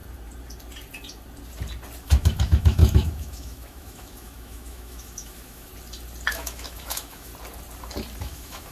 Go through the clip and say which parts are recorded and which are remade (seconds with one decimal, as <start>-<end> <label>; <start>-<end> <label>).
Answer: 0.0-2.0 recorded; 2.0-5.7 remade; 5.7-6.3 recorded; 6.3-7.3 remade; 7.3-8.2 recorded; 8.2-8.7 remade